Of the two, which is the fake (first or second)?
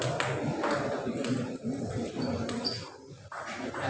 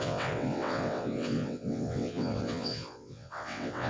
second